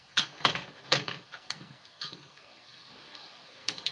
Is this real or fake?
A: fake